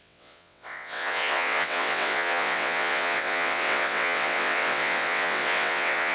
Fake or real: fake